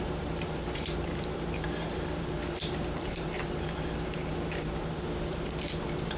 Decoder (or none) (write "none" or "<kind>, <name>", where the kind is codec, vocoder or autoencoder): vocoder, BigVGAN v2